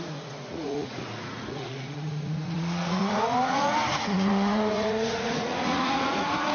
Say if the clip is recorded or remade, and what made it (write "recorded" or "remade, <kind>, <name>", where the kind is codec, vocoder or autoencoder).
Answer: remade, vocoder, Vocos